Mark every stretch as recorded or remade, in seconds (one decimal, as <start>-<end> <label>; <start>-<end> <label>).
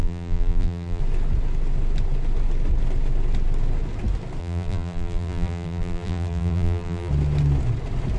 0.0-1.0 remade; 1.0-4.4 recorded; 4.4-7.1 remade; 7.1-8.2 recorded